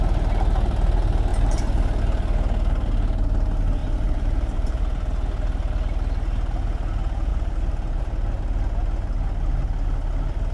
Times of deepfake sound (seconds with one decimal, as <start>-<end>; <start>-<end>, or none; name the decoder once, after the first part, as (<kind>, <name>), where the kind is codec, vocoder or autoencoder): 1.3-2.0 (vocoder, BigVGAN v2); 3.8-4.8; 7.3-8.0